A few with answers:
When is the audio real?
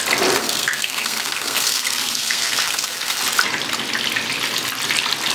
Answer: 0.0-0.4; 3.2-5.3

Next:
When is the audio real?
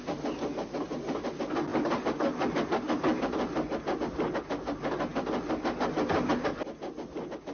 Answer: 0.0-7.5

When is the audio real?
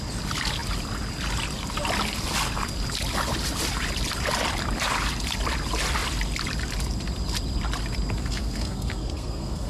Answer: 0.0-8.2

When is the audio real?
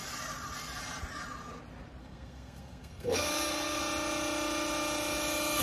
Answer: 0.0-2.0; 3.8-5.6